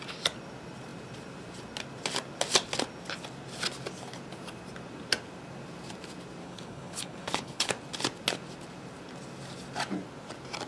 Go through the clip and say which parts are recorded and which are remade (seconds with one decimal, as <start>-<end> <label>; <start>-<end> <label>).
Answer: 0.0-6.4 recorded; 6.4-7.7 remade; 7.7-10.7 recorded